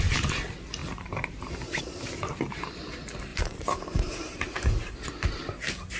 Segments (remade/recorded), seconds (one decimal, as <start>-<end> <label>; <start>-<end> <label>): 0.0-0.8 recorded; 0.8-1.8 remade; 1.8-3.3 recorded; 3.3-4.9 remade; 4.9-6.0 recorded